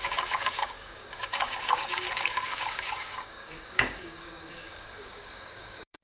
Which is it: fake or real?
fake